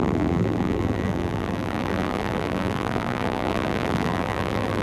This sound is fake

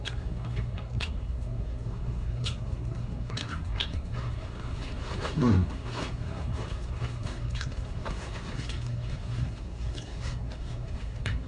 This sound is fake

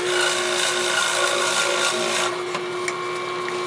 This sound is real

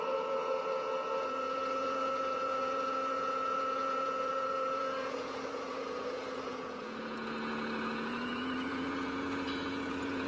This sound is fake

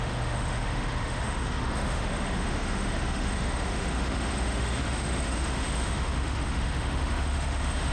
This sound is fake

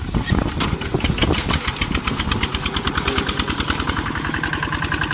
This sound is real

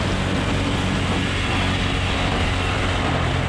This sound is real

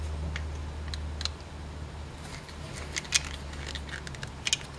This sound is real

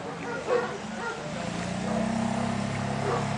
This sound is real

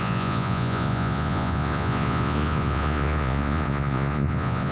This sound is fake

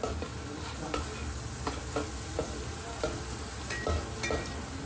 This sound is real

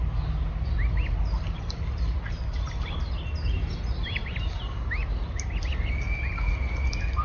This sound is real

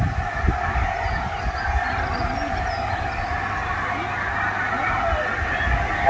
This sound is real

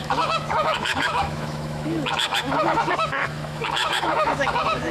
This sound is fake